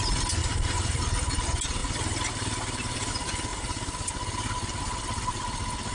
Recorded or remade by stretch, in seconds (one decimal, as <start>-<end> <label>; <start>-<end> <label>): 0.0-0.4 recorded; 0.4-1.0 remade; 1.0-1.8 recorded; 1.8-3.1 remade; 3.1-3.5 recorded; 3.5-4.1 remade; 4.1-5.9 recorded